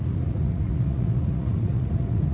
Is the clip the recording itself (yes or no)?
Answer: no